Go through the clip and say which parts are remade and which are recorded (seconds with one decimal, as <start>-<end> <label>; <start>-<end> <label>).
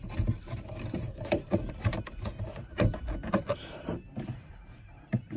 0.0-1.9 remade; 1.9-2.4 recorded; 2.4-2.9 remade; 2.9-3.5 recorded; 3.5-5.4 remade